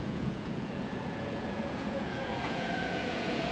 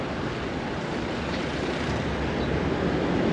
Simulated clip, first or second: first